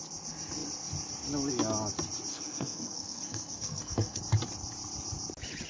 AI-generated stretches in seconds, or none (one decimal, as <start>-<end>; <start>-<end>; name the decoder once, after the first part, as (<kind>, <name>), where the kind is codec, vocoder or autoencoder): 2.3-4.2 (codec, SNAC)